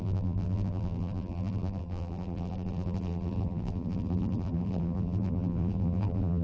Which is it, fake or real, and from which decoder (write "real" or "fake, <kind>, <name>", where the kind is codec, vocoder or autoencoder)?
fake, vocoder, BigVGAN v2